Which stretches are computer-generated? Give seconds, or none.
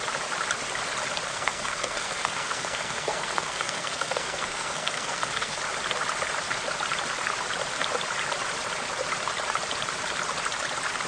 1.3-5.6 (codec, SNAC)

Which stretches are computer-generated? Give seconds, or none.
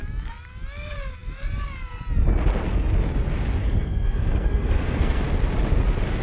3.6-5.2 (codec, SNAC)